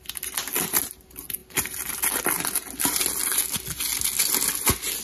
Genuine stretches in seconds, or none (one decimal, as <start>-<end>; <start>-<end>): 0.0-5.0